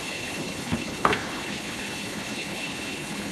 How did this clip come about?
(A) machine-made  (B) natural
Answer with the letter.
A